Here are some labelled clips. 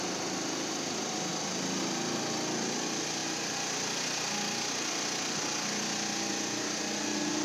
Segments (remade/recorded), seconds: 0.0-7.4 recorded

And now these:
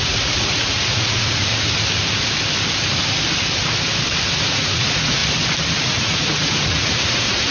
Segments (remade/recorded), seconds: 0.0-1.5 remade; 1.5-4.5 recorded; 4.5-5.2 remade; 5.2-5.8 recorded; 5.8-7.5 remade

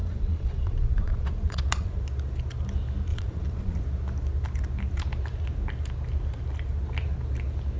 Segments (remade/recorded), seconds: 0.0-2.0 remade; 2.0-3.1 recorded; 3.1-3.8 remade; 3.8-7.8 recorded

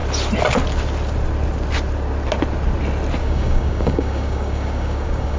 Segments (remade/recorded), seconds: 0.0-3.2 recorded; 3.2-5.4 remade

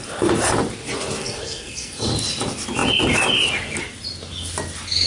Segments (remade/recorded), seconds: 0.0-1.2 recorded; 1.2-2.1 remade; 2.1-5.1 recorded

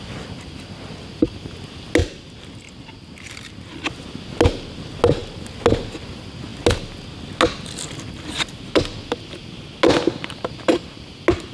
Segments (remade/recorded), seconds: 0.0-11.5 recorded

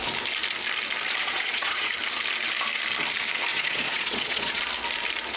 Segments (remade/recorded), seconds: 0.0-1.2 recorded; 1.2-1.9 remade; 1.9-3.5 recorded; 3.5-4.6 remade; 4.6-5.4 recorded

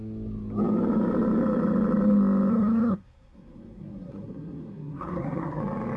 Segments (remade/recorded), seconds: 0.0-2.5 recorded; 2.5-5.6 remade; 5.6-6.0 recorded